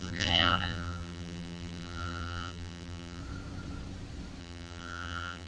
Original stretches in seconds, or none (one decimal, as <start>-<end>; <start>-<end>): 3.2-4.4